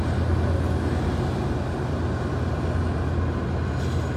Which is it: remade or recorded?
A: recorded